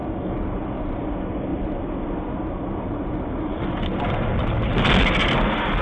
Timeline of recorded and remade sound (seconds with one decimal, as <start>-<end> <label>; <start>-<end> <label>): 0.0-5.8 recorded